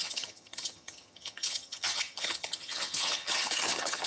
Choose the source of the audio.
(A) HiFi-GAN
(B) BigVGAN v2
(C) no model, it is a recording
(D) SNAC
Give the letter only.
A